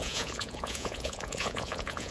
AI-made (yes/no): yes